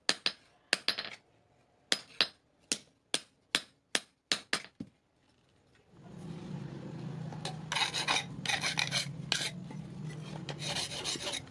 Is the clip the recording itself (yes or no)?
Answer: yes